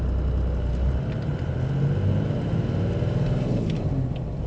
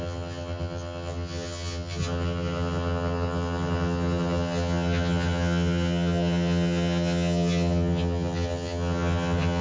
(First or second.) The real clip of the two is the first